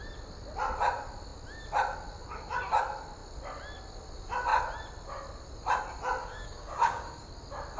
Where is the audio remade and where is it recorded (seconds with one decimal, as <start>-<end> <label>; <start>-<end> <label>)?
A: 0.0-6.2 recorded; 6.2-7.3 remade; 7.3-7.8 recorded